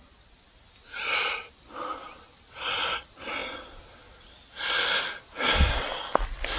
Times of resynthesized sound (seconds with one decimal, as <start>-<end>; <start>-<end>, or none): none